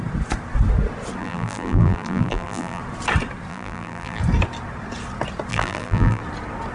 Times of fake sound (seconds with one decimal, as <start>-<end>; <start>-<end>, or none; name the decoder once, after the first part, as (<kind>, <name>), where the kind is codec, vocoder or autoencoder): 1.2-2.8 (vocoder, BigVGAN v2); 3.5-4.2; 5.5-6.2